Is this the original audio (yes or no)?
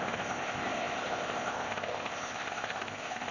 no